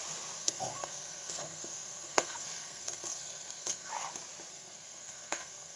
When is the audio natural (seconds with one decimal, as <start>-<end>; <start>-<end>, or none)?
0.0-0.4; 3.9-4.5